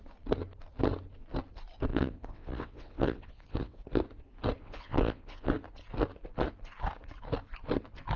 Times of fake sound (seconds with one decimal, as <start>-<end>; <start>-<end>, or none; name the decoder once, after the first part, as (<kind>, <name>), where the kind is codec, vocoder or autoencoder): 1.9-3.8 (vocoder, WaveNeXt); 4.6-5.5